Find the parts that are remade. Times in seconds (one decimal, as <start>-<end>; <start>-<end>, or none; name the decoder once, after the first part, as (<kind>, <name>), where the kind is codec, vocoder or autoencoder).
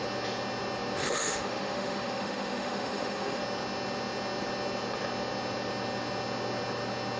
1.0-3.4 (autoencoder, DAC-VAE)